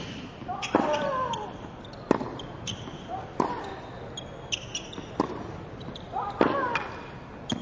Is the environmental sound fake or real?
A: real